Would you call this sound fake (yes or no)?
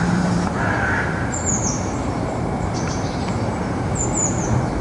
yes